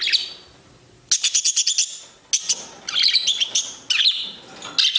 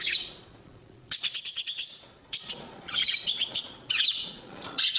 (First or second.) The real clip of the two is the first